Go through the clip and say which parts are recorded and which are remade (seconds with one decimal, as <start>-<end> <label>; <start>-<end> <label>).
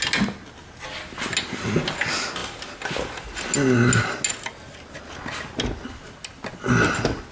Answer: 0.0-7.3 recorded